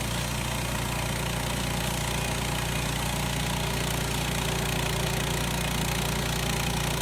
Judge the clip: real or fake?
real